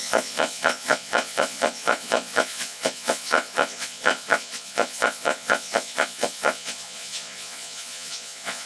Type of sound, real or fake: fake